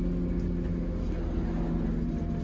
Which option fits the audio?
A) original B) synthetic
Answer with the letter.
A